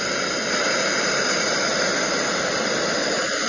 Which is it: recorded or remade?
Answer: recorded